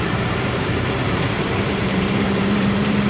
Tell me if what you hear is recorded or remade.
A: remade